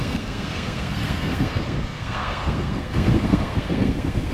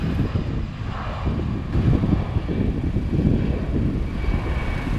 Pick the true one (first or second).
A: second